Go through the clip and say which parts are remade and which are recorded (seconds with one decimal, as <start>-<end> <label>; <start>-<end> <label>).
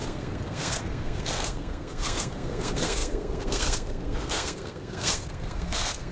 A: 0.0-6.1 remade